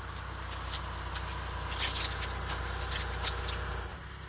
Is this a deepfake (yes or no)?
no